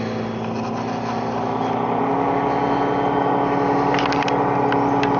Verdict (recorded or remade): recorded